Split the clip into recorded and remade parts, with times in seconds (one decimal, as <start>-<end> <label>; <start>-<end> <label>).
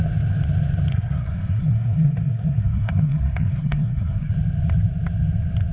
0.0-0.9 recorded; 0.9-4.3 remade; 4.3-5.7 recorded